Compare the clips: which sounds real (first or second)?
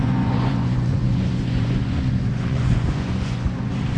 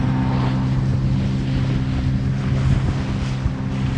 second